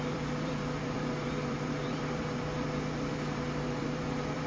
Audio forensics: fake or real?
fake